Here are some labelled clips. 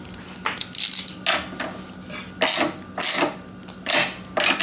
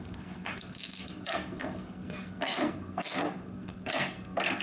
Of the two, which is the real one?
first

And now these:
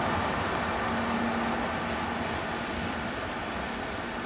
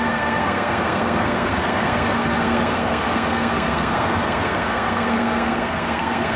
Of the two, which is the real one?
first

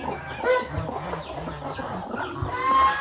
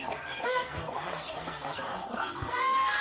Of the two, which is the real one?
first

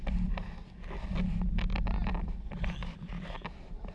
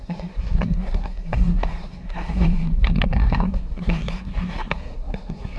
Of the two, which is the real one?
first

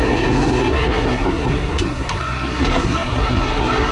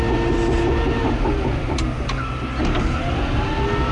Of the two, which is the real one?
second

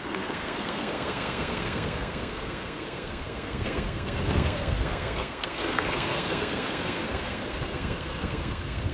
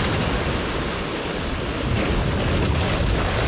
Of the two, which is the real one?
second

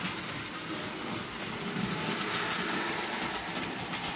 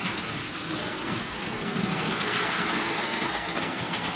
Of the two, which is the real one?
first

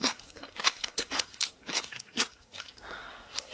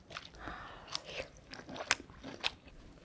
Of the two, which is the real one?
second